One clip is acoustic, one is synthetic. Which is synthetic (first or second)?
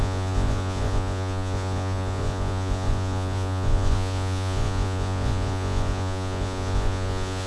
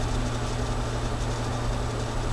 first